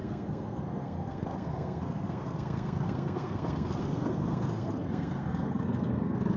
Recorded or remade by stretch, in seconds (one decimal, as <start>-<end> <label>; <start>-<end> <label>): 0.0-6.4 remade